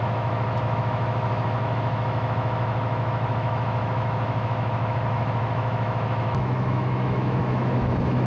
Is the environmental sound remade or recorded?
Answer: remade